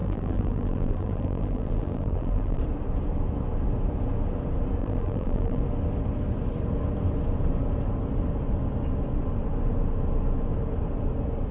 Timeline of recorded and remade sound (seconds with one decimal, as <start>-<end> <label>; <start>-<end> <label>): 0.0-2.6 remade; 2.6-4.8 recorded; 4.8-5.6 remade; 5.6-11.5 recorded